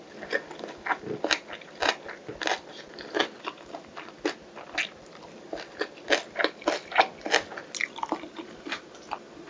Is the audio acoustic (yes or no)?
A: yes